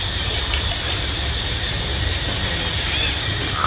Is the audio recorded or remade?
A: recorded